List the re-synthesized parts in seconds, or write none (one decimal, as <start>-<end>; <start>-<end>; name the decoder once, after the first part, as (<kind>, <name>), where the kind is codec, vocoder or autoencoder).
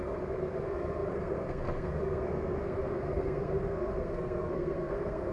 0.0-5.3 (codec, SNAC)